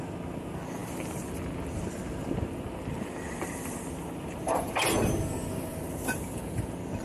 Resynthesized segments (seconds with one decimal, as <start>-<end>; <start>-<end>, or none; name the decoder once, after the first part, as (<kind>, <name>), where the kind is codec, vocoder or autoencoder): none